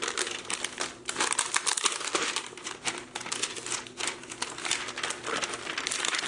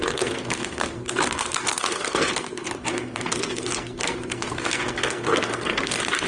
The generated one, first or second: second